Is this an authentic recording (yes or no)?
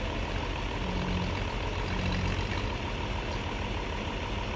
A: yes